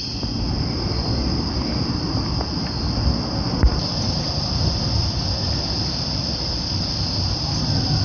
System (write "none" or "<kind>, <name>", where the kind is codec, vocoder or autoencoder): none